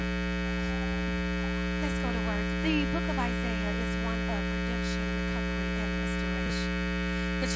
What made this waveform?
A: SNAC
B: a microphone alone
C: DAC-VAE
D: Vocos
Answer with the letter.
B